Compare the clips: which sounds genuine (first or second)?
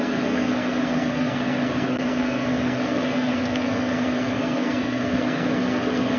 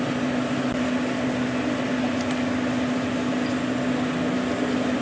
second